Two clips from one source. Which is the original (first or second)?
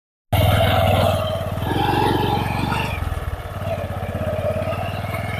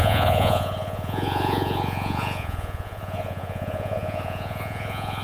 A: first